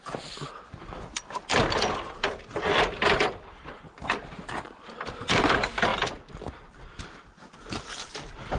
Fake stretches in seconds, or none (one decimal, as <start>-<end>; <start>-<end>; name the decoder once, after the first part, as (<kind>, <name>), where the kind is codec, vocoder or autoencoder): 5.9-7.5 (vocoder, BigVGAN v2)